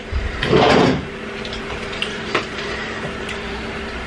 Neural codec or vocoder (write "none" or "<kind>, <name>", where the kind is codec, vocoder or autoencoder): vocoder, BigVGAN v2